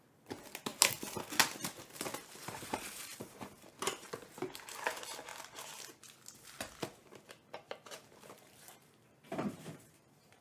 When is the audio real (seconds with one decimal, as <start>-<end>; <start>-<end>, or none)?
0.0-2.4; 4.1-7.0

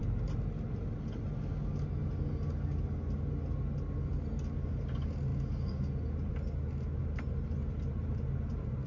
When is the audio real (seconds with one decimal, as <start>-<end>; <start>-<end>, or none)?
0.0-8.9

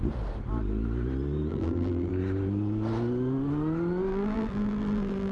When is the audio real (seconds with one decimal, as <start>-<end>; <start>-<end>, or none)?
0.0-1.5; 2.1-4.1

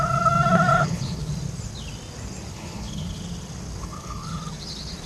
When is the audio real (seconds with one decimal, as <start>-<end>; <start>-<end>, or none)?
0.0-0.8; 1.3-2.5; 3.2-3.8; 4.4-5.1